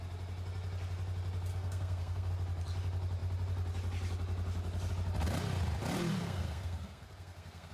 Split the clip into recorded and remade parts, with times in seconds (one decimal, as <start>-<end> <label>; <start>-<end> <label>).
0.0-1.5 recorded; 1.5-2.3 remade; 2.3-6.2 recorded; 6.2-7.7 remade